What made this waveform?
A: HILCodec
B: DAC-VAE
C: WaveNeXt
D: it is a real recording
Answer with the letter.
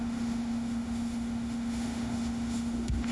B